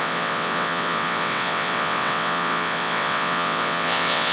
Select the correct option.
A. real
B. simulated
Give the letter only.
B